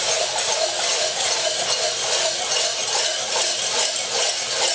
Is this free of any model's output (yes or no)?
yes